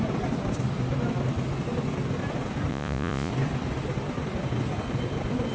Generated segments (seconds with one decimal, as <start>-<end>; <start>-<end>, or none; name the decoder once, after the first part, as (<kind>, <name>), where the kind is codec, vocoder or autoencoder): 2.7-3.3 (vocoder, Vocos)

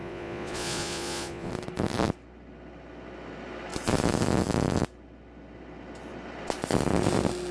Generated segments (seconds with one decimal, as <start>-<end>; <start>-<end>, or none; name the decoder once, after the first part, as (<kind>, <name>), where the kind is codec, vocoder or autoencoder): 0.0-1.5 (vocoder, Vocos)